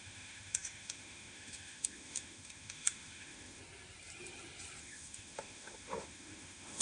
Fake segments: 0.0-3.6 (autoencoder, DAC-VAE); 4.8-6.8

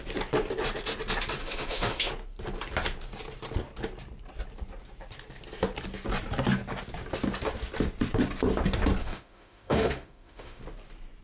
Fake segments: 1.4-2.1 (autoencoder, DAC-VAE); 9.0-10.6

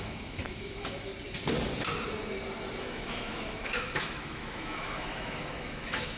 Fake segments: 0.0-1.1 (autoencoder, DAC-VAE); 2.8-6.2

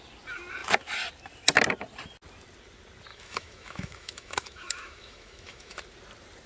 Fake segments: 3.1-5.8 (autoencoder, DAC-VAE)

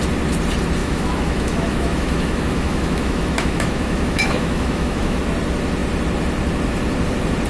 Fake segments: 0.8-5.2 (autoencoder, DAC-VAE)

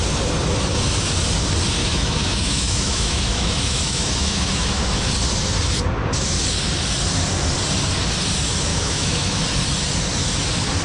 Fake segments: 1.8-5.1 (autoencoder, DAC-VAE); 8.7-9.4

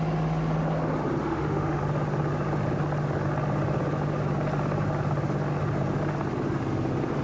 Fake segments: 1.2-1.8 (autoencoder, DAC-VAE)